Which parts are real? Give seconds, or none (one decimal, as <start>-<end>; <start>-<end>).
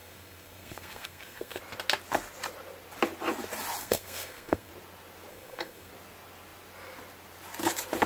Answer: 1.6-3.8; 4.7-5.3; 5.9-8.1